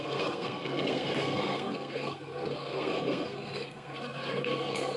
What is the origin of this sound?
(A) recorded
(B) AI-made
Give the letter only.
B